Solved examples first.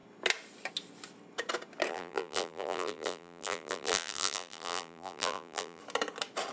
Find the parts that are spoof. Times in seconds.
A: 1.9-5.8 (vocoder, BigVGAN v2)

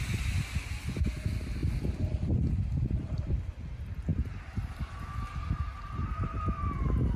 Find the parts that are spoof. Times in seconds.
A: 1.6-3.4 (vocoder, BigVGAN v2); 4.1-4.8